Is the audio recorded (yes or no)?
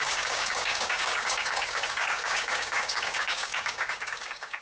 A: no